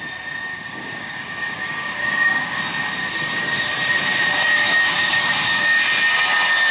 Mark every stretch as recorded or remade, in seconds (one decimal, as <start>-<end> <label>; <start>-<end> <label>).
0.0-0.5 recorded; 0.5-2.6 remade; 2.6-3.0 recorded; 3.0-3.7 remade; 3.7-4.4 recorded; 4.4-5.8 remade; 5.8-6.7 recorded